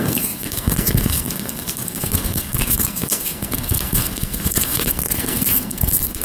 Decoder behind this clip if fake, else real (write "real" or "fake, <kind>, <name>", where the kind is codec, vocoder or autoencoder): fake, codec, SNAC